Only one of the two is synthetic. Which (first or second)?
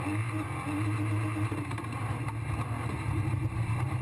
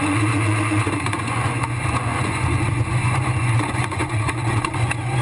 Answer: second